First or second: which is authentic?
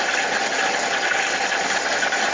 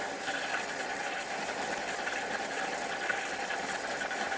first